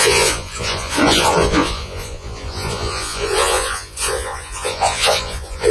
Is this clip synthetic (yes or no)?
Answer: yes